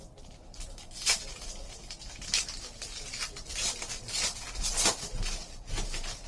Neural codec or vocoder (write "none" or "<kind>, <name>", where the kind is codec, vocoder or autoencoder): none